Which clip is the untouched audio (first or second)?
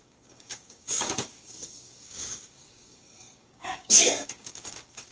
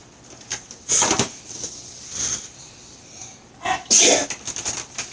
second